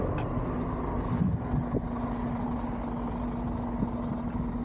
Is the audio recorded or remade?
recorded